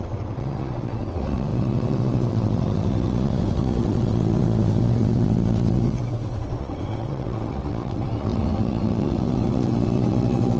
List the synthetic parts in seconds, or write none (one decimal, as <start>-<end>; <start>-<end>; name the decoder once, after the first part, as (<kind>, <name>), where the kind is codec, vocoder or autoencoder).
0.0-10.6 (vocoder, WaveNeXt)

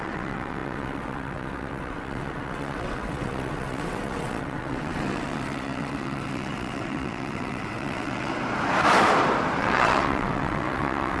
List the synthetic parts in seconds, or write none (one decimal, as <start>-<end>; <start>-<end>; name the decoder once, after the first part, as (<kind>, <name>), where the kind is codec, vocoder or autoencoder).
0.0-8.3 (vocoder, WaveNeXt); 9.6-11.2

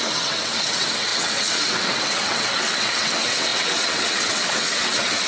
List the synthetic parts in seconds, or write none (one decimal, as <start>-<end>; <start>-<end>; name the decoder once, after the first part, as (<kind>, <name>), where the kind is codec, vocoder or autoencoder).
0.0-5.3 (vocoder, WaveNeXt)

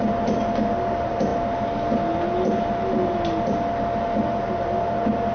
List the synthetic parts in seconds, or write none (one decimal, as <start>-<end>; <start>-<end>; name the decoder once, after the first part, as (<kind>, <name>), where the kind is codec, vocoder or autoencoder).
none

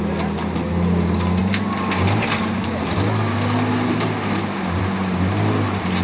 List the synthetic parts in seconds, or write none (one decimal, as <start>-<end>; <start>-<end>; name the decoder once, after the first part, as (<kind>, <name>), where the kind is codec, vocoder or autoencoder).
none

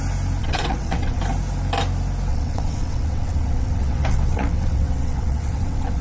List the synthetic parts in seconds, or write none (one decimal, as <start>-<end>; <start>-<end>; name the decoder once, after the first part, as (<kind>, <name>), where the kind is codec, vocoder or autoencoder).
0.4-1.2 (vocoder, WaveNeXt); 2.3-6.0

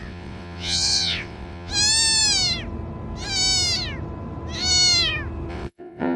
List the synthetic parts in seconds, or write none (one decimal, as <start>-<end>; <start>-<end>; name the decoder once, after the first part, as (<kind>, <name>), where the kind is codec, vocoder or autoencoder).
0.0-1.7 (vocoder, WaveNeXt); 5.5-6.2

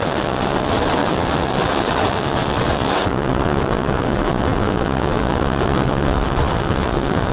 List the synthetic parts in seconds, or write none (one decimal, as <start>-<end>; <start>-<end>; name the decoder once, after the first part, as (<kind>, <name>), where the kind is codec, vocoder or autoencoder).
0.0-7.3 (vocoder, WaveNeXt)